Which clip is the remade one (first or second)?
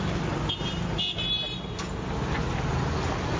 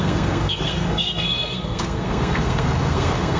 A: second